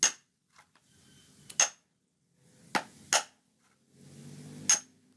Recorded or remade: recorded